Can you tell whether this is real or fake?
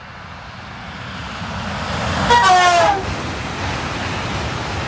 real